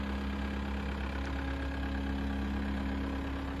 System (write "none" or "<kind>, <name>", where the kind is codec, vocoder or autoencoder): none